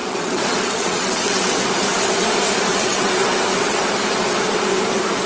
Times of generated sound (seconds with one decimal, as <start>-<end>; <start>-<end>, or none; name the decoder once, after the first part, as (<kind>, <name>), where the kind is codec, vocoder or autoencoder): 0.0-1.6 (vocoder, WaveNeXt); 2.7-3.8